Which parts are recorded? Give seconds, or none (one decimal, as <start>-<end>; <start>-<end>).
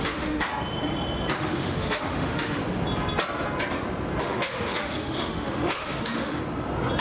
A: 0.5-1.4; 2.6-4.2; 6.4-7.0